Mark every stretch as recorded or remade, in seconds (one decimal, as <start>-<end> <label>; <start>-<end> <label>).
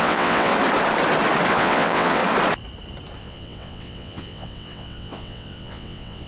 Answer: 0.0-0.5 remade; 0.5-1.5 recorded; 1.5-2.2 remade; 2.2-3.2 recorded; 3.2-6.3 remade